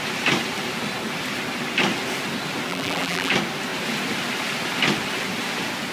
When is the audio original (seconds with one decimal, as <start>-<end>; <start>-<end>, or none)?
0.0-2.7; 3.3-5.9